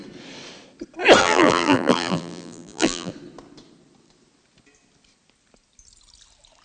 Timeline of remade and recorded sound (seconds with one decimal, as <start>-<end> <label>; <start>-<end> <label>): 0.0-1.2 recorded; 1.2-3.1 remade; 3.1-6.6 recorded